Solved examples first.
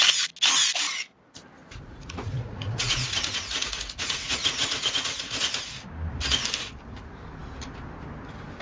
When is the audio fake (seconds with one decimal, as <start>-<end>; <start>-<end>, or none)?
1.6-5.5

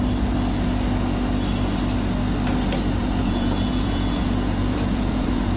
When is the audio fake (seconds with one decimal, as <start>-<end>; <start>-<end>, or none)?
3.0-5.6

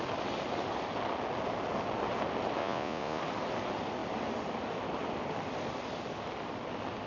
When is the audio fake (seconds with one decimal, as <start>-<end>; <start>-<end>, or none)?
2.6-3.2